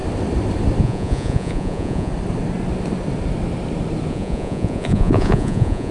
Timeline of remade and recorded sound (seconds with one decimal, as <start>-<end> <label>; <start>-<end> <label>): 0.0-0.8 recorded; 0.8-2.1 remade; 2.1-4.1 recorded; 4.1-5.9 remade

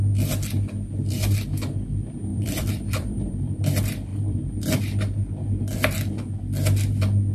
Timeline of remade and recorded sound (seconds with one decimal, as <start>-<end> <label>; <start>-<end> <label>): 0.0-2.3 recorded; 2.3-3.6 remade; 3.6-4.1 recorded; 4.1-4.8 remade; 4.8-7.3 recorded